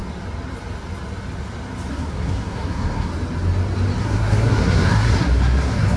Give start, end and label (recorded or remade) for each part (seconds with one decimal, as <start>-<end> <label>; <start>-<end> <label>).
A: 0.0-1.9 recorded; 1.9-3.1 remade; 3.1-4.0 recorded; 4.0-6.0 remade